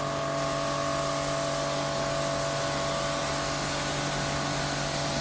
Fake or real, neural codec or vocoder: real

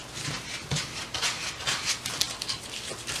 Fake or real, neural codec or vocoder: real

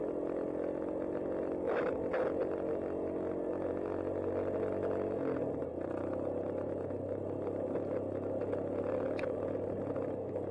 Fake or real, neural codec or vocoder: real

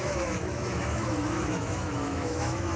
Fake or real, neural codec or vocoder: fake, autoencoder, DAC-VAE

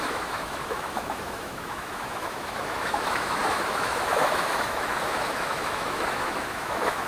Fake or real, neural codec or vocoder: fake, autoencoder, DAC-VAE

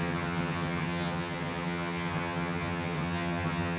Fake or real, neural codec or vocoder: fake, vocoder, HiFi-GAN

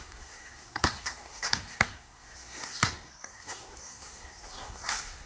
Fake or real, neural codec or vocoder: fake, codec, SNAC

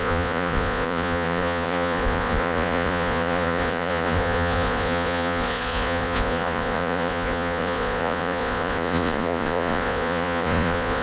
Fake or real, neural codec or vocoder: fake, vocoder, Vocos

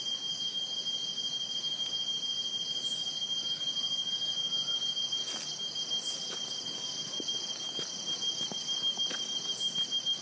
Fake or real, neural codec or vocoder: real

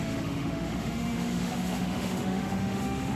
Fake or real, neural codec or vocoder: fake, autoencoder, DAC-VAE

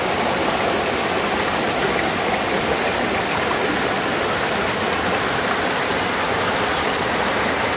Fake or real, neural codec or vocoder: real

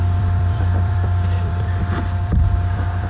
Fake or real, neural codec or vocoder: fake, vocoder, BigVGAN v2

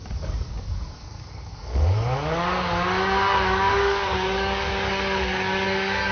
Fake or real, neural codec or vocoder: fake, codec, DAC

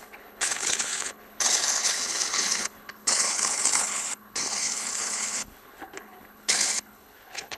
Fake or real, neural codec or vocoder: fake, codec, HILCodec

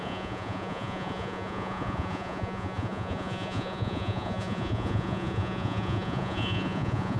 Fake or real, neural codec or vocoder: fake, vocoder, Vocos